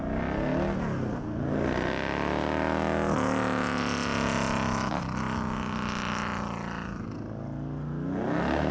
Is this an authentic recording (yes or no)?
yes